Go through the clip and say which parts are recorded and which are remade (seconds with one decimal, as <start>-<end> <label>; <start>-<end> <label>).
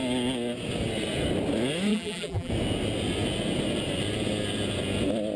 0.0-1.9 recorded; 1.9-2.5 remade; 2.5-5.4 recorded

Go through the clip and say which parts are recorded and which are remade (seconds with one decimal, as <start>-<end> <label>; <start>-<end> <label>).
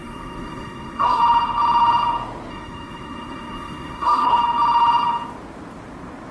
0.0-1.2 remade; 1.2-2.5 recorded; 2.5-4.4 remade; 4.4-6.3 recorded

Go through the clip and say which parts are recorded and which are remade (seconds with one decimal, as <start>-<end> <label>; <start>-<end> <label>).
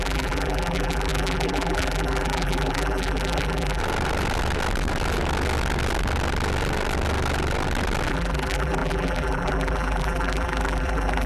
0.0-3.8 remade; 3.8-8.1 recorded; 8.1-11.3 remade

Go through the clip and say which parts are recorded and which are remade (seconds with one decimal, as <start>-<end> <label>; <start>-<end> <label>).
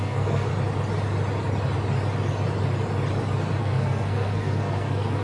0.0-0.5 remade; 0.5-3.6 recorded; 3.6-5.2 remade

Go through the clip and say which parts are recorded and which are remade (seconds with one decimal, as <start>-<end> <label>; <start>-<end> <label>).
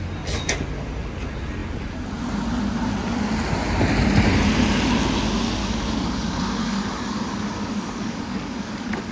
0.0-5.6 recorded; 5.6-9.1 remade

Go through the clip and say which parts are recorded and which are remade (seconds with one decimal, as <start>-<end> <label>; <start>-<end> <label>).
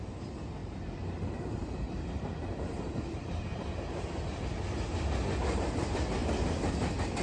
0.0-0.6 recorded; 0.6-3.5 remade; 3.5-7.2 recorded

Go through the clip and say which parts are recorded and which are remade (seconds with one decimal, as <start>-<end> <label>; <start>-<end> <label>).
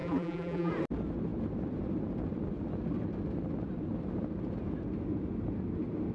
0.0-0.7 remade; 0.7-6.1 recorded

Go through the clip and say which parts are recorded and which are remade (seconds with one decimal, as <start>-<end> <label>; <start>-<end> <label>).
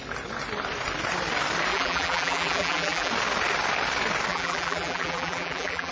0.0-1.7 recorded; 1.7-3.1 remade; 3.1-4.3 recorded; 4.3-5.9 remade